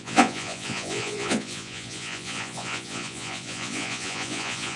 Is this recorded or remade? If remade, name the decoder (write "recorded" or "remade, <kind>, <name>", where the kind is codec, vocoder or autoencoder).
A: remade, vocoder, Vocos